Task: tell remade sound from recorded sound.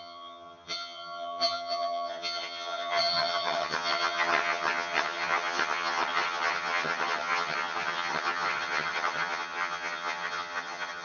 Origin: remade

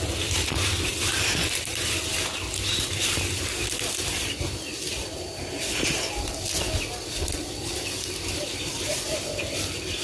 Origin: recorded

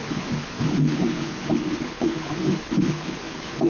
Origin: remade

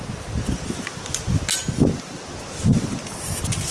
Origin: recorded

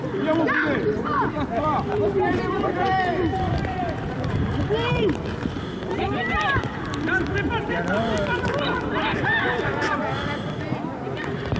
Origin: remade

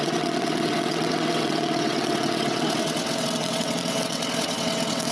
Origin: remade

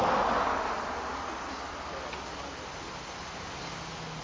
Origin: recorded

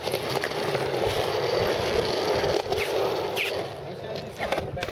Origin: recorded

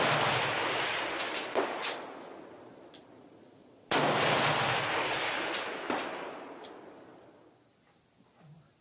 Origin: recorded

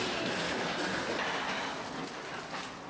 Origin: recorded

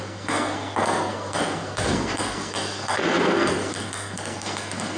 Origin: remade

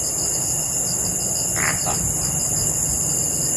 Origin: recorded